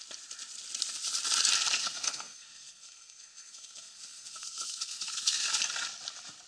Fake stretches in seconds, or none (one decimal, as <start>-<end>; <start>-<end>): 1.8-5.5